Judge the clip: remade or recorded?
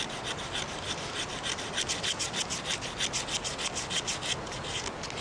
recorded